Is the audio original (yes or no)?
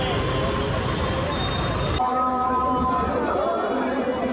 yes